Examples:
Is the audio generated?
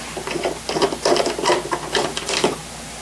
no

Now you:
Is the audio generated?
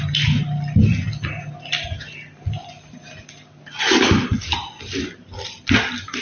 no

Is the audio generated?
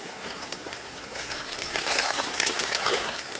yes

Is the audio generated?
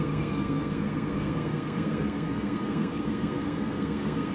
yes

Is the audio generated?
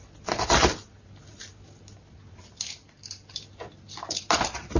no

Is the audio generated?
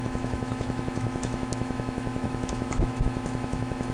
yes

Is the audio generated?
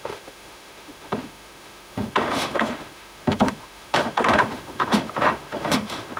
yes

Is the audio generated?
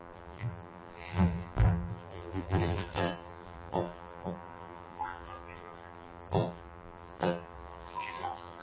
yes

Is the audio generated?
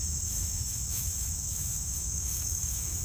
yes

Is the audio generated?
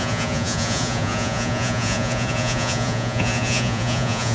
yes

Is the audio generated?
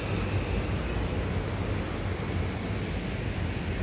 no